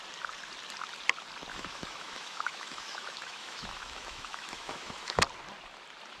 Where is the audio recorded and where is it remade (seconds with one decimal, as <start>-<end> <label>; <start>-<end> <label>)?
0.0-1.5 recorded; 1.5-5.2 remade; 5.2-6.2 recorded